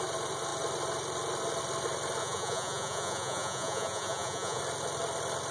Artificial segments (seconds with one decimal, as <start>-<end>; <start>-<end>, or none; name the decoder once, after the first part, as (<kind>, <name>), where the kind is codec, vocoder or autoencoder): 2.2-4.6 (vocoder, Vocos)